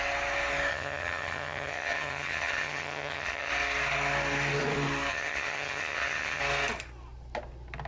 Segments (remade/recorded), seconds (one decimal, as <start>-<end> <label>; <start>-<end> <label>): 0.0-0.7 recorded; 0.7-3.5 remade; 3.5-5.1 recorded; 5.1-6.4 remade; 6.4-7.9 recorded